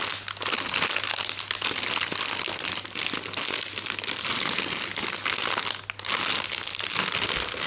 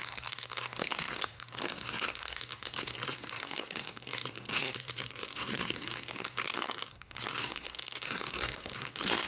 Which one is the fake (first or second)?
second